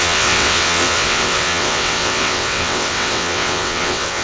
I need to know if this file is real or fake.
fake